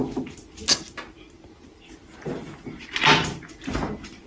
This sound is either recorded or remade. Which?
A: recorded